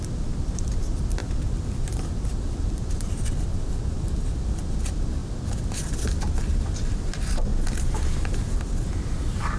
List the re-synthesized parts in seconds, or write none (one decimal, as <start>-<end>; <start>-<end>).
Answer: 1.2-4.6; 5.2-5.9; 7.5-8.9